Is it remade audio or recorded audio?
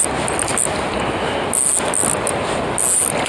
recorded